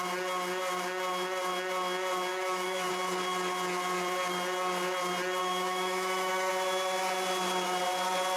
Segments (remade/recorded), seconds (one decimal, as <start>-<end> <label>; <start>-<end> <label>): 0.0-2.3 recorded; 2.3-2.9 remade; 2.9-5.4 recorded; 5.4-6.5 remade; 6.5-8.4 recorded